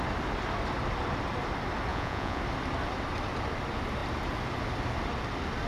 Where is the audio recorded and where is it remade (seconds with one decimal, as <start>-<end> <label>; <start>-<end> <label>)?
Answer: 0.0-1.9 recorded; 1.9-2.4 remade; 2.4-5.7 recorded